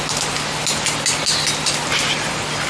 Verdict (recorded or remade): recorded